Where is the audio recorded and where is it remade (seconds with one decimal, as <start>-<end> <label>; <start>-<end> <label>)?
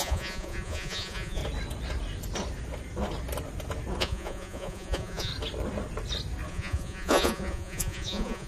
0.0-1.4 remade; 1.4-4.0 recorded; 4.0-5.3 remade; 5.3-6.5 recorded; 6.5-8.5 remade